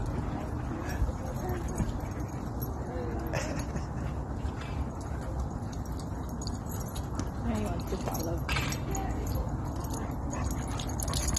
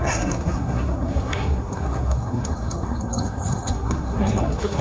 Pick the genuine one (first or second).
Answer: first